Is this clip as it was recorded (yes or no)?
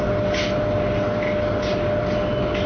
yes